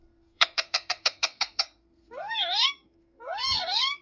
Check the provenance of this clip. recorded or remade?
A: remade